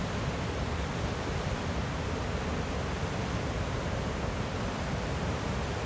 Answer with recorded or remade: recorded